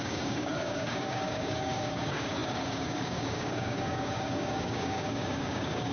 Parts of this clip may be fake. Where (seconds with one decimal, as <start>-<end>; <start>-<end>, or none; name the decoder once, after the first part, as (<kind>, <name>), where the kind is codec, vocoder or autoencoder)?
0.0-5.9 (codec, DAC)